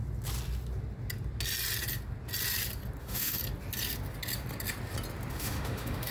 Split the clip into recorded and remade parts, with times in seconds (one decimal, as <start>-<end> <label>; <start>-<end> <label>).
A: 0.0-3.0 recorded; 3.0-3.4 remade; 3.4-5.3 recorded; 5.3-6.1 remade